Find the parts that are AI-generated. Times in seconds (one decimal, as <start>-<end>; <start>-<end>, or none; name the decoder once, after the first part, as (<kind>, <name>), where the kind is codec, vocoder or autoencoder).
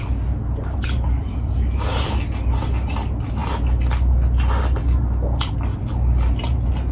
none